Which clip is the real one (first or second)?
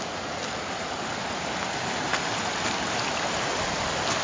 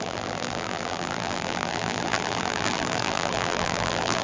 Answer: first